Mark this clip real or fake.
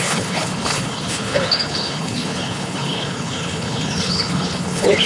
fake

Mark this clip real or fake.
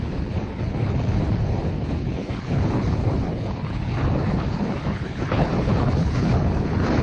fake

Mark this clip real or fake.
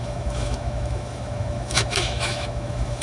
fake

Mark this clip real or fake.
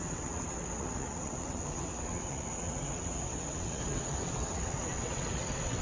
fake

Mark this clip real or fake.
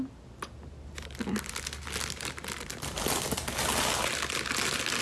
real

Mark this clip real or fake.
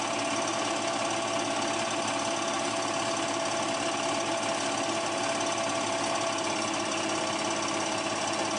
real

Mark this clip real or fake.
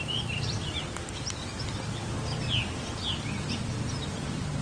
fake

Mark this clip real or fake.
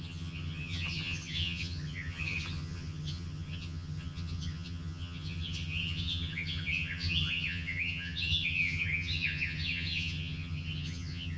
fake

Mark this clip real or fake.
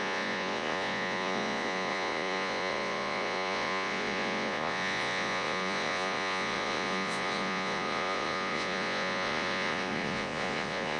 fake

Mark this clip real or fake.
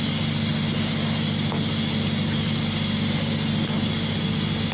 real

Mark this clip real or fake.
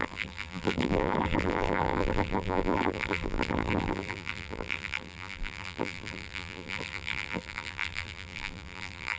fake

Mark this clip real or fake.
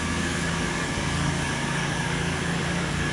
fake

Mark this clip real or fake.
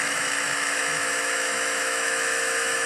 fake